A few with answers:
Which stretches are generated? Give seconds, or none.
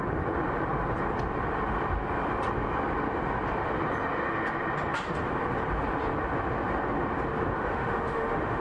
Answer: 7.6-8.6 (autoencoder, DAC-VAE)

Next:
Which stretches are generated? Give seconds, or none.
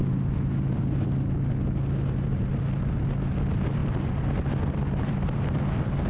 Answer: none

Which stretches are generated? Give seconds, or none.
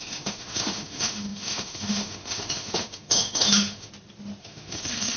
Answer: 0.0-3.9 (autoencoder, DAC-VAE); 4.4-5.2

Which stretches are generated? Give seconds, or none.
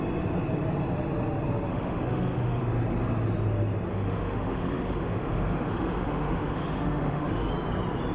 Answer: 1.7-2.6 (autoencoder, DAC-VAE); 3.9-7.5